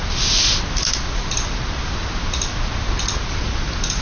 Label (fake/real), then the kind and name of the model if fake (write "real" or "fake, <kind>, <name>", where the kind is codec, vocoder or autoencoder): real